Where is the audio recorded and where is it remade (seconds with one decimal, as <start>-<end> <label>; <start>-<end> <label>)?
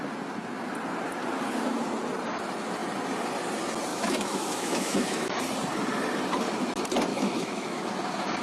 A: 0.0-3.9 recorded; 3.9-5.4 remade; 5.4-7.1 recorded; 7.1-7.9 remade; 7.9-8.4 recorded